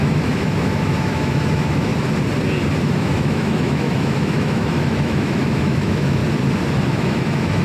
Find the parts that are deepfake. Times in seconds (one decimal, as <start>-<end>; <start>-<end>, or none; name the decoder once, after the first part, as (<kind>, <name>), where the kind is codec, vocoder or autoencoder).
0.0-1.9 (autoencoder, DAC-VAE); 2.8-6.2; 6.9-7.6